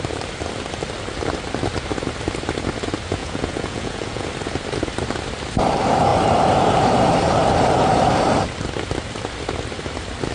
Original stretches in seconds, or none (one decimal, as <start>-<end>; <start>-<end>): 0.0-3.2; 4.3-10.3